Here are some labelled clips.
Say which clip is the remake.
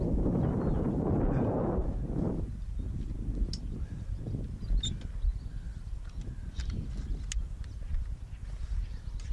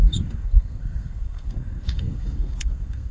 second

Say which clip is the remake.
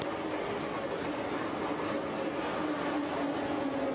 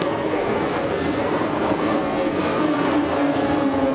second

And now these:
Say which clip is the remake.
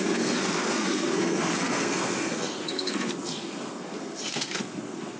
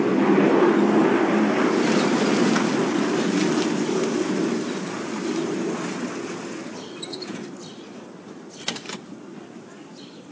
first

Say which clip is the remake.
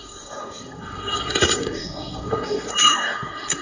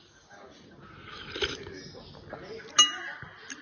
first